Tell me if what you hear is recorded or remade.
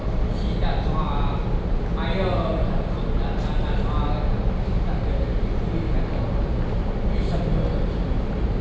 recorded